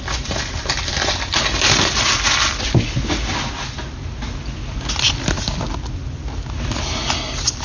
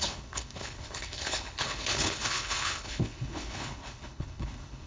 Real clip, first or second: first